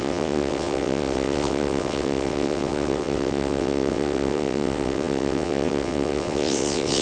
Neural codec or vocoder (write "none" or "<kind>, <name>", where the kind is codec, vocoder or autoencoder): vocoder, WaveNeXt